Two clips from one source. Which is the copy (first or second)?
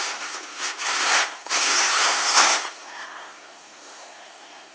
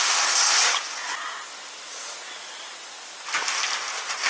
first